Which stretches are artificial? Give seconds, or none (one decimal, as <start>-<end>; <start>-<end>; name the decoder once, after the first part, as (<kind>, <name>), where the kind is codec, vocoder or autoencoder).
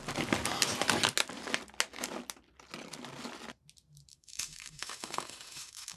4.1-6.0 (autoencoder, DAC-VAE)